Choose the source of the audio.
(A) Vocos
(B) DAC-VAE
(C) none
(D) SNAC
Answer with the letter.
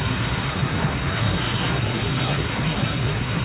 D